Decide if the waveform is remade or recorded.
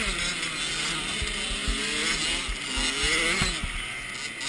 recorded